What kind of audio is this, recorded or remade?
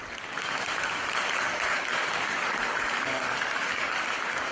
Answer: remade